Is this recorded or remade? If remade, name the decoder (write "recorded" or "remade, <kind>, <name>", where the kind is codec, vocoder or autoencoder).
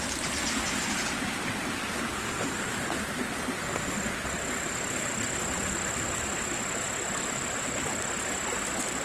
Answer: recorded